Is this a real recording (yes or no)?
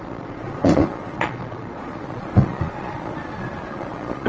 no